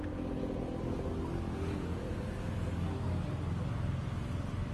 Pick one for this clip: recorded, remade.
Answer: recorded